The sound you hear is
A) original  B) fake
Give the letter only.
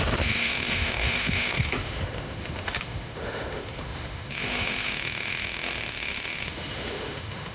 B